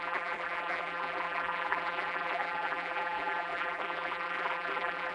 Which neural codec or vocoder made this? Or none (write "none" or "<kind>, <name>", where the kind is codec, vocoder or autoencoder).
vocoder, BigVGAN v2